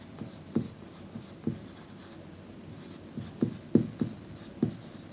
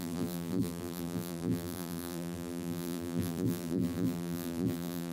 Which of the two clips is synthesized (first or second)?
second